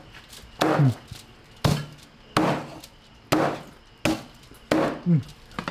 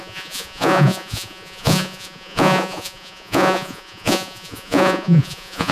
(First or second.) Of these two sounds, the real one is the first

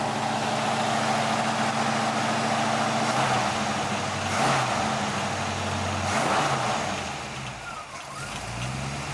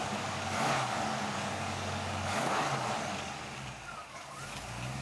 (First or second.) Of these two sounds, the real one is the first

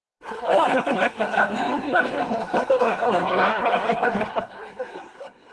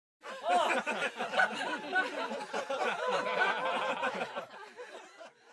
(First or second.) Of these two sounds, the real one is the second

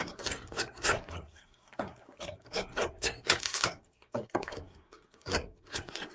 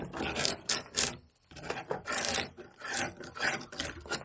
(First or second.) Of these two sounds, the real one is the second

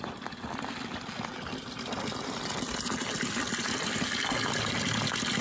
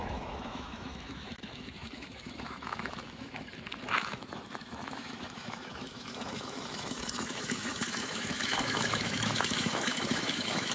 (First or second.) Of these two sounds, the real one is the first